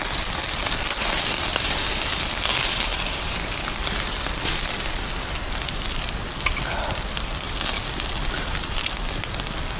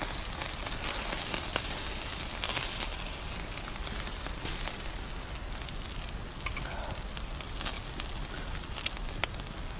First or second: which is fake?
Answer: first